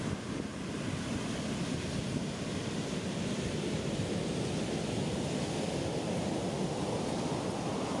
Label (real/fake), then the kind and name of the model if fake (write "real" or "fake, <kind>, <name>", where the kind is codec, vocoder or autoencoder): real